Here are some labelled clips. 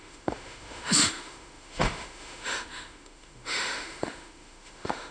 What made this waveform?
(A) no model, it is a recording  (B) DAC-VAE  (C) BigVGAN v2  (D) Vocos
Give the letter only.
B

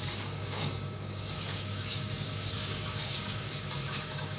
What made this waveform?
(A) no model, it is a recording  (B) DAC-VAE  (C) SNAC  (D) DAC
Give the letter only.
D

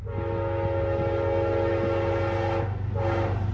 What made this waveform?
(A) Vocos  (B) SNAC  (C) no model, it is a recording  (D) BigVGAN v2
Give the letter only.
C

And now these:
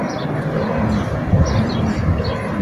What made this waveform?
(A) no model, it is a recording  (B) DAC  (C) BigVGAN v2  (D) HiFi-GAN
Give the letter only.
A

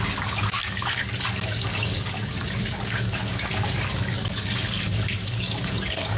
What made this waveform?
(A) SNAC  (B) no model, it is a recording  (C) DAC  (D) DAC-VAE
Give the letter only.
C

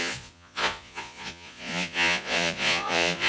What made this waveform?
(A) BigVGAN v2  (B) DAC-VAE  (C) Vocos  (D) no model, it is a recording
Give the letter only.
C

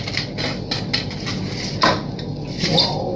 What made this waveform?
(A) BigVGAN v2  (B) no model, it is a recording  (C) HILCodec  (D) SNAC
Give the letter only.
B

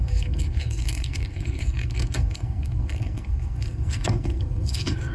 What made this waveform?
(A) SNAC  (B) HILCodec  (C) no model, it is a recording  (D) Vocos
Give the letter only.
A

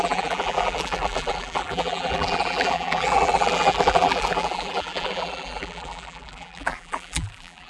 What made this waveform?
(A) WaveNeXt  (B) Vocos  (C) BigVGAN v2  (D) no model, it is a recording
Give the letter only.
C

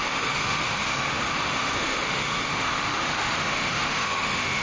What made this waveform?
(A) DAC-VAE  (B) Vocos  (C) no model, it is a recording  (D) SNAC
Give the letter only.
A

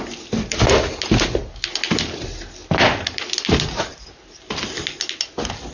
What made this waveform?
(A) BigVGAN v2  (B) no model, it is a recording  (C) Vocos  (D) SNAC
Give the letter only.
B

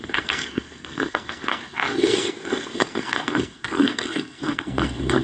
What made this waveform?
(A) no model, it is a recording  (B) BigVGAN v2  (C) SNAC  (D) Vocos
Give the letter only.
C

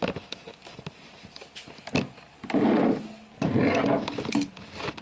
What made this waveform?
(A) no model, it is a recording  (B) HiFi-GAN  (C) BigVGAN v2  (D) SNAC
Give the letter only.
A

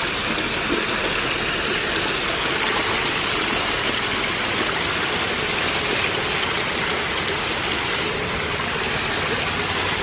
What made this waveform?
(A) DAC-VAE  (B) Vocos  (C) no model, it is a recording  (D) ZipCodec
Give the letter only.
C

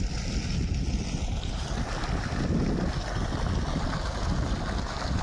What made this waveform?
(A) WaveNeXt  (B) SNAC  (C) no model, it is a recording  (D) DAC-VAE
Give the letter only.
C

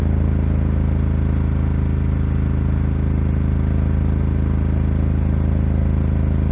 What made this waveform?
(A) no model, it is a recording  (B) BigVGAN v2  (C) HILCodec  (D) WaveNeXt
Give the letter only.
A